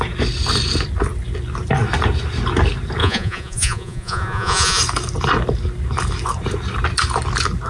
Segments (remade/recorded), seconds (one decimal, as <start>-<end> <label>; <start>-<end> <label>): 0.0-3.0 recorded; 3.0-4.8 remade; 4.8-7.7 recorded